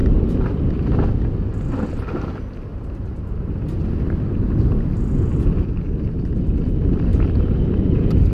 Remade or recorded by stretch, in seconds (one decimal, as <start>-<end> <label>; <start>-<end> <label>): 0.0-0.7 remade; 0.7-2.7 recorded; 2.7-3.6 remade; 3.6-7.1 recorded; 7.1-8.3 remade